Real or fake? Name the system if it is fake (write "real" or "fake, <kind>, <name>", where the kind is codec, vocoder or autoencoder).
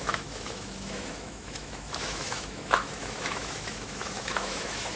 fake, autoencoder, DAC-VAE